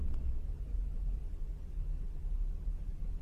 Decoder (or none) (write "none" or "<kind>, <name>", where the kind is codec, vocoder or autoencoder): none